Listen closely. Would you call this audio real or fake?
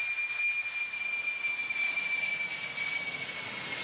real